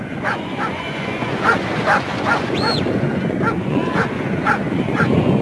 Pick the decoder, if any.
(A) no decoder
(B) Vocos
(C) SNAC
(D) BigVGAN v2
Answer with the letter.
B